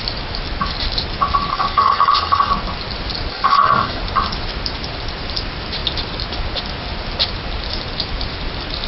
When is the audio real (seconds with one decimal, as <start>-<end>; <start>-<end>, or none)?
0.0-1.5; 2.5-3.3; 4.0-8.9

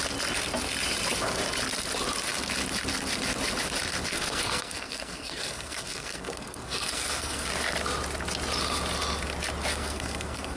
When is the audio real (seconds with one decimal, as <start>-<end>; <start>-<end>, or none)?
0.0-4.1; 7.5-9.7

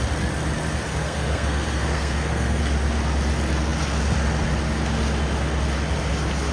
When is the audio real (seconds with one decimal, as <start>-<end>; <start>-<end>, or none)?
0.0-0.9; 2.6-6.5

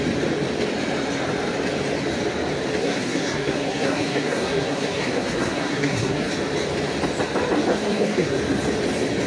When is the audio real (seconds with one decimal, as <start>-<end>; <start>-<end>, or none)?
0.0-2.8; 6.3-7.7; 8.4-9.3